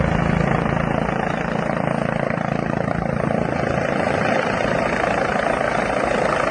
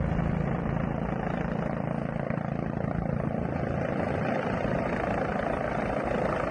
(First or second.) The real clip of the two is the first